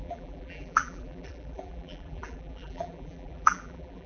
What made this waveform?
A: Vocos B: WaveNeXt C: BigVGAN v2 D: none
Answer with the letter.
C